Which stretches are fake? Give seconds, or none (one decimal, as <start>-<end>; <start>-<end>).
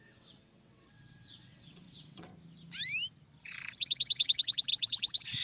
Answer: 0.0-2.3; 3.4-5.4